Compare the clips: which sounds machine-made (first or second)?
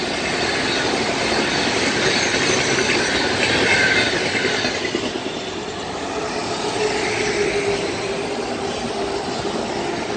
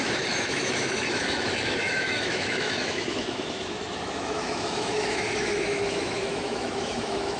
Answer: second